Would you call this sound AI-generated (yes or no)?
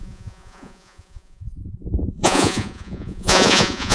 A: yes